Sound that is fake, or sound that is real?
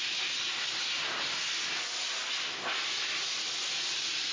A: real